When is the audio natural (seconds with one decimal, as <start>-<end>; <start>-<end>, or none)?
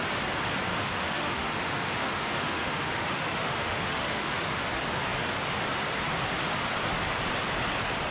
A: 0.0-0.7; 4.6-8.1